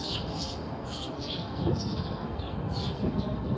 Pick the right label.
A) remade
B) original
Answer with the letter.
A